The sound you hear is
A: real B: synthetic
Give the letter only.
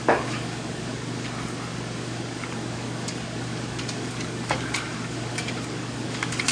B